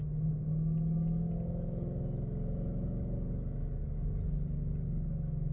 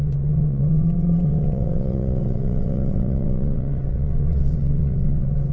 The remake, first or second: second